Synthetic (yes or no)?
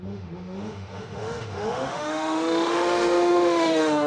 yes